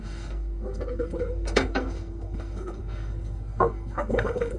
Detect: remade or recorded remade